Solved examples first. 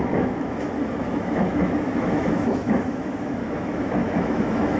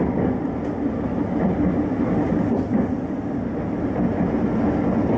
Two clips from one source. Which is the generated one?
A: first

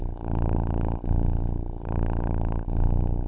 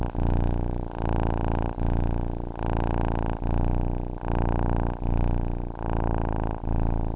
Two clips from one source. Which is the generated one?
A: first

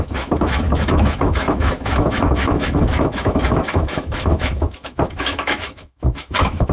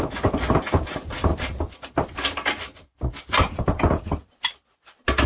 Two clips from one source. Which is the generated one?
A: first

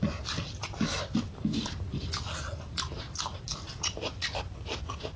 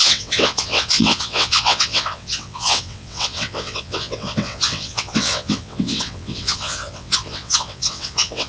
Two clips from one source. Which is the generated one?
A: second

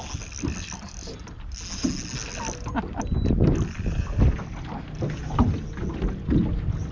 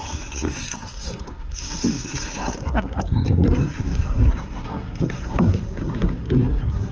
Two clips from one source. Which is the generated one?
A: second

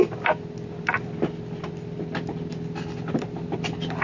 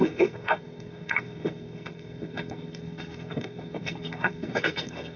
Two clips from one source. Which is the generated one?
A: second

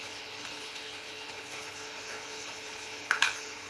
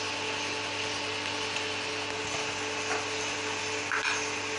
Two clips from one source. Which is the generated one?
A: first